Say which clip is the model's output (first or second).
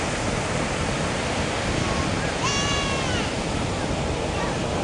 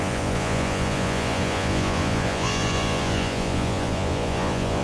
second